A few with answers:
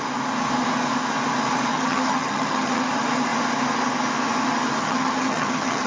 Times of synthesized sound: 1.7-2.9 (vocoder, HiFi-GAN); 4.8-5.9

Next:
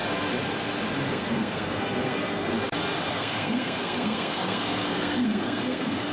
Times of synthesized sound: 1.1-2.5 (codec, SNAC); 3.1-6.1

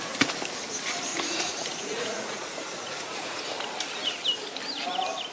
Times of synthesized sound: 1.1-3.4 (vocoder, Vocos)

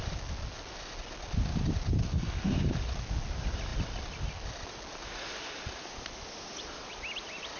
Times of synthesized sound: 2.0-2.6 (codec, SNAC)

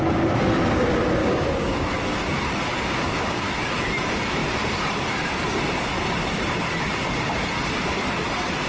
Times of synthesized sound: 1.2-1.9 (codec, DAC); 2.7-3.5

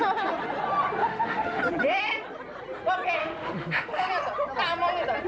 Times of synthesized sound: 1.0-1.6 (autoencoder, DAC-VAE); 3.2-4.1

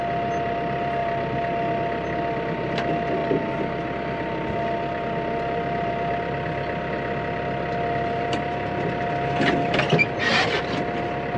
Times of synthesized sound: none